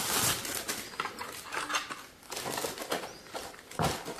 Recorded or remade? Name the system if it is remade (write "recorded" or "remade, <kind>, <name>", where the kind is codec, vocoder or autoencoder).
recorded